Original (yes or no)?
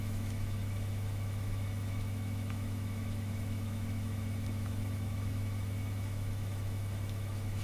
no